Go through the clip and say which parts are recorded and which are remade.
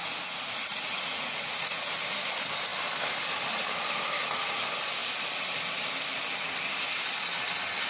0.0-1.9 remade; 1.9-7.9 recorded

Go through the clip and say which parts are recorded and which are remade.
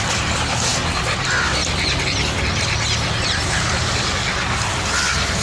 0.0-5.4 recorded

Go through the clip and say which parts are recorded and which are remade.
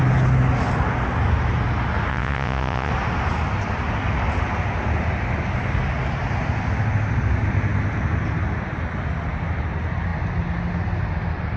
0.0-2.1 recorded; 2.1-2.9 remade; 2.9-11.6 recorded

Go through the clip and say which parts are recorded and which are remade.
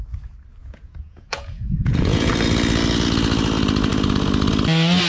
0.0-0.6 recorded; 0.6-2.3 remade; 2.3-5.1 recorded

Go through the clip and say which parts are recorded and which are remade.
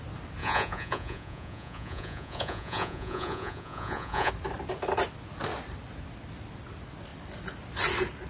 0.0-0.4 recorded; 0.4-4.3 remade; 4.3-8.3 recorded